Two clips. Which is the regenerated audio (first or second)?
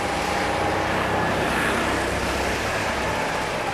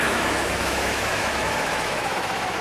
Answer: second